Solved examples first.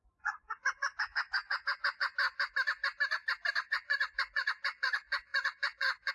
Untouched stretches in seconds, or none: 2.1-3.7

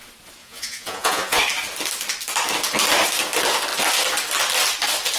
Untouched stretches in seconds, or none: 0.0-0.4; 1.4-5.2

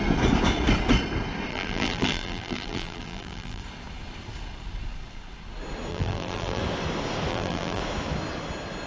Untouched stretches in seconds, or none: 0.0-1.5; 3.6-5.9; 6.6-7.3; 7.8-8.9

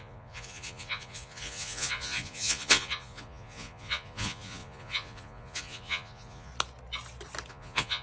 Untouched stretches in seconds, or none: 6.5-7.5

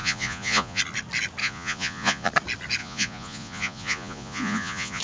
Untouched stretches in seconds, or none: 0.8-1.4; 2.3-2.8